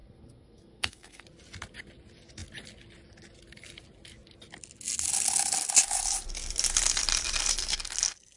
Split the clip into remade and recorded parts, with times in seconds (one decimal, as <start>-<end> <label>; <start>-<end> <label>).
0.0-1.2 remade; 1.2-8.4 recorded